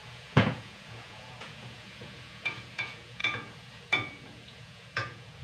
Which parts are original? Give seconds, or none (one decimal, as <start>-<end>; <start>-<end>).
none